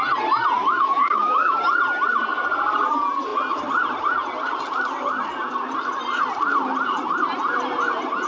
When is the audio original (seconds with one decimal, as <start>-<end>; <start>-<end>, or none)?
0.0-0.6; 1.6-8.3